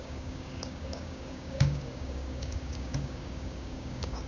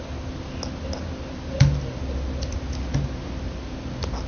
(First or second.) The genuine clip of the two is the second